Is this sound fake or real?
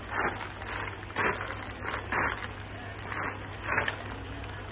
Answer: real